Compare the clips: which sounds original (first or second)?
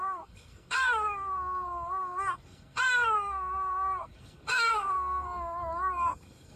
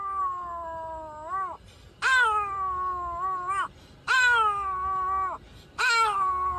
second